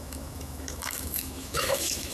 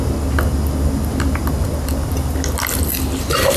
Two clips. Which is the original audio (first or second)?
second